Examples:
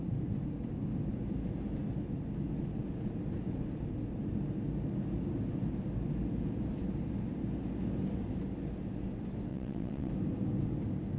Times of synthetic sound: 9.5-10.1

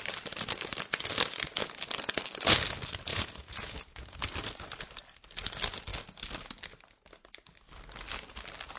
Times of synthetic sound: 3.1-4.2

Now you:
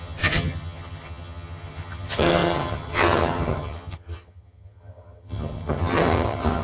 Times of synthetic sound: 0.0-6.6